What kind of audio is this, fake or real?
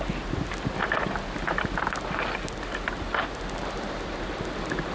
real